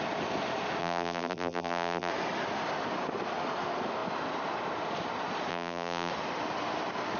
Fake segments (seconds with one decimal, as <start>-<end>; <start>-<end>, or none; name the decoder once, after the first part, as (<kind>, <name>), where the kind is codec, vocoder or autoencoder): 0.8-2.1 (vocoder, BigVGAN v2); 5.5-6.1